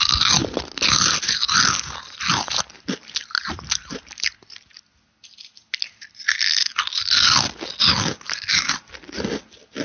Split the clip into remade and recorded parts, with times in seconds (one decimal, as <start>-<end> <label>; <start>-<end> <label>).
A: 0.0-9.8 recorded